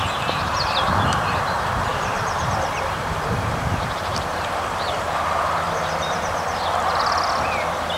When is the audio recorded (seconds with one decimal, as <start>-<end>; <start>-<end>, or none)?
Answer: 1.4-1.9; 6.3-8.0